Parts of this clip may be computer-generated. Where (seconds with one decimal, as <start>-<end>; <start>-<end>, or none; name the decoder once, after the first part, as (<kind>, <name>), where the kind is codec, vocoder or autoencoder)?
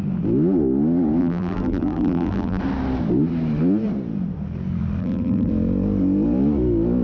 1.2-2.6 (vocoder, BigVGAN v2); 5.0-5.5